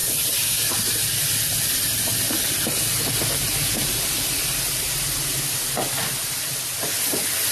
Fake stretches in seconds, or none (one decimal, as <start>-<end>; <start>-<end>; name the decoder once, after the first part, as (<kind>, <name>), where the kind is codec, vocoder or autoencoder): none